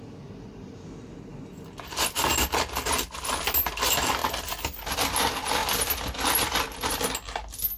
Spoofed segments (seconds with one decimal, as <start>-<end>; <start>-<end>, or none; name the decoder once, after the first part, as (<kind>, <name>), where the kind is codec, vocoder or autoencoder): none